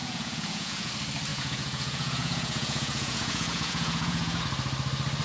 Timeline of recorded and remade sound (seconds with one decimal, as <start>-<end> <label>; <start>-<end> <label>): 0.0-0.9 remade; 0.9-1.3 recorded; 1.3-4.4 remade; 4.4-5.2 recorded